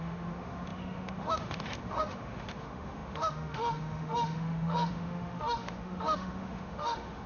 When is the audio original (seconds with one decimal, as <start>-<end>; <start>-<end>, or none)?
none